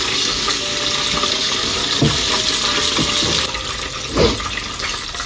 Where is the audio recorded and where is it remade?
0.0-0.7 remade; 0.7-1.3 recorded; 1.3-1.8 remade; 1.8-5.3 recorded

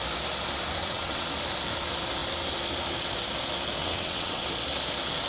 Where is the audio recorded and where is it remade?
0.0-0.8 recorded; 0.8-1.3 remade; 1.3-3.8 recorded; 3.8-4.4 remade; 4.4-5.3 recorded

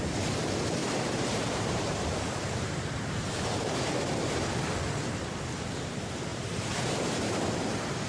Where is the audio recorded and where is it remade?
0.0-0.8 recorded; 0.8-3.9 remade; 3.9-6.3 recorded; 6.3-7.4 remade; 7.4-8.1 recorded

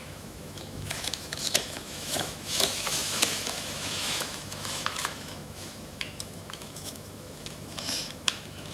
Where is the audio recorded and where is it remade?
0.0-8.7 remade